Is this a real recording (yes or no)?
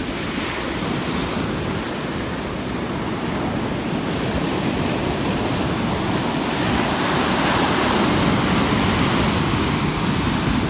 yes